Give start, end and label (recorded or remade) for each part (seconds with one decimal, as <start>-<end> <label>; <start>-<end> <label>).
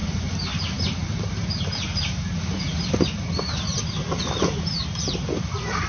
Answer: 0.0-5.9 recorded